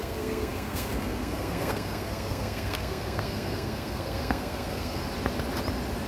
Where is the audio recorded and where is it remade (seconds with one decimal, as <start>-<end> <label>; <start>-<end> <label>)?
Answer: 0.0-5.0 remade; 5.0-6.1 recorded

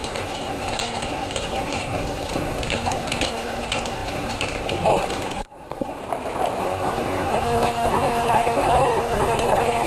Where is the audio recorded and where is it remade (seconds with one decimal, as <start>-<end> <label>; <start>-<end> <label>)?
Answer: 0.0-6.0 remade; 6.0-6.6 recorded; 6.6-9.9 remade

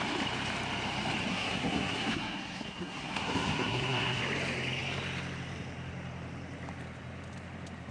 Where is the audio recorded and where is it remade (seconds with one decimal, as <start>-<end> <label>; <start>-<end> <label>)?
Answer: 0.0-1.3 recorded; 1.3-4.2 remade; 4.2-7.9 recorded